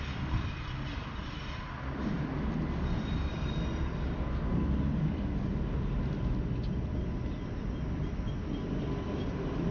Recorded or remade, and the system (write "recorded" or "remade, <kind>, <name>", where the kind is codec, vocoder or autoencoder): recorded